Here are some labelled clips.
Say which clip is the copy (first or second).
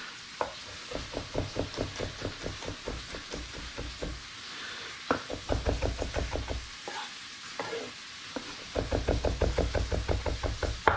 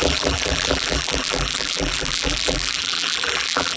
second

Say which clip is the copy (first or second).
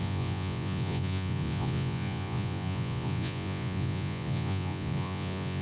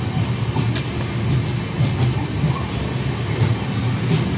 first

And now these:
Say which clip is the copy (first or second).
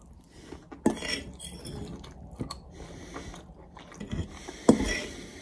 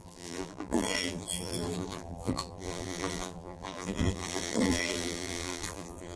second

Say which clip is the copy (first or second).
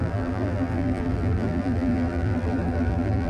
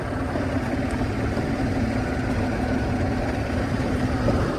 first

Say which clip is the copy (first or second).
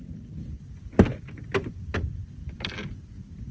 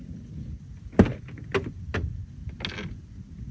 first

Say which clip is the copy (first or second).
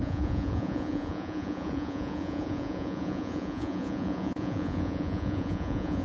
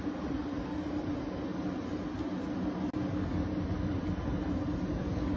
first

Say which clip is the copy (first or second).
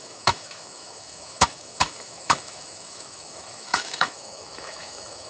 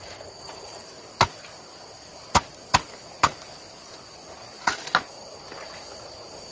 first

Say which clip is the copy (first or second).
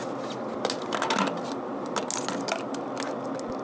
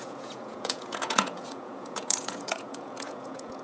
second